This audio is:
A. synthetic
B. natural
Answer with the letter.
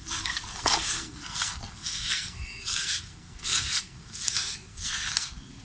A